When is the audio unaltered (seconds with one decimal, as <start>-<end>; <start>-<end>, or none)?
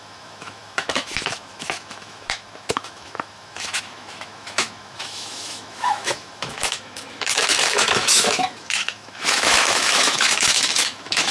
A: none